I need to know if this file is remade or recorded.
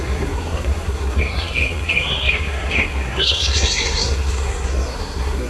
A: remade